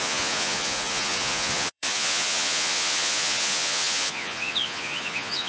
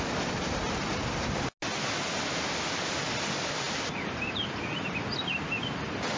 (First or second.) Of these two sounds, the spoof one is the first